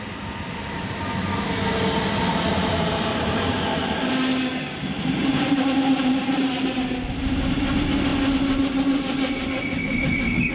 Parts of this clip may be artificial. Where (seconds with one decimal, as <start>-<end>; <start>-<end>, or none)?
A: 2.5-6.4